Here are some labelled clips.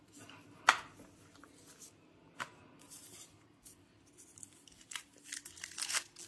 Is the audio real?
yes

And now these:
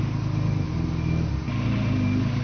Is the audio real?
yes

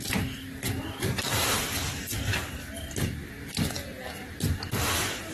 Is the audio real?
yes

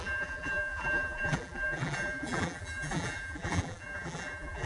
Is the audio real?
no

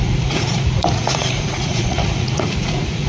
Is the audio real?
no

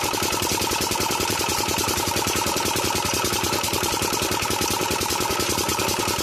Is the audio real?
no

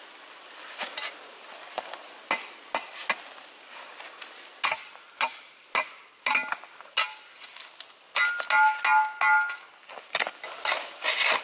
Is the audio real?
yes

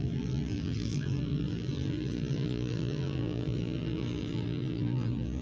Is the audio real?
no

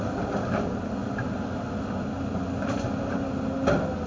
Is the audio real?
yes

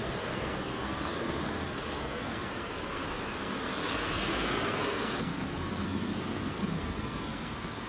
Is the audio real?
no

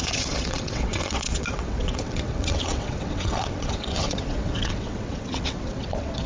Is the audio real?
no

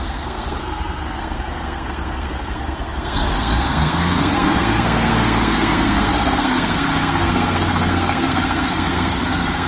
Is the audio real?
no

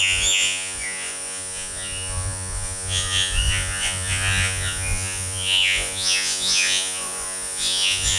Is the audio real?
no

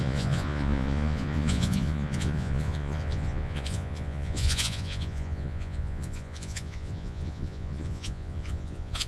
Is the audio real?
no